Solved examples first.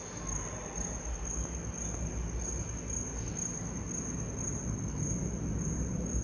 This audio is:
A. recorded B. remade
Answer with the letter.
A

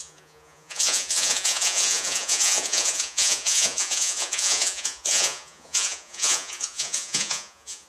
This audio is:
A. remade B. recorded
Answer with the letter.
A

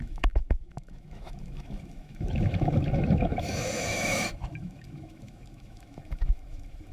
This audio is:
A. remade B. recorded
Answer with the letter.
A